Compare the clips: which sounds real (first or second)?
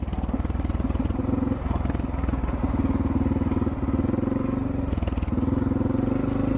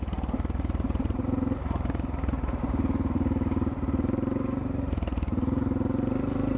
first